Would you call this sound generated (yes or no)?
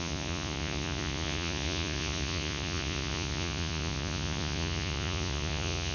yes